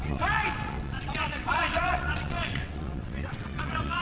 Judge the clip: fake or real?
fake